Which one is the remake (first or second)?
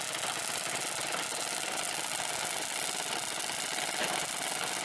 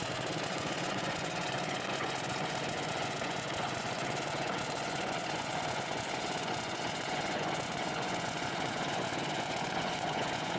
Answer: second